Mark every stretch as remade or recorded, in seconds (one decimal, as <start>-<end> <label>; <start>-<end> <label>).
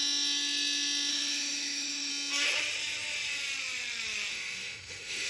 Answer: 0.0-1.1 recorded; 1.1-2.1 remade; 2.1-4.3 recorded; 4.3-5.3 remade